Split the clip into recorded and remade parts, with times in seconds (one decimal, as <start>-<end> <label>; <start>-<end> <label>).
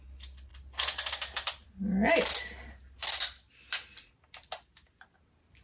0.0-5.6 recorded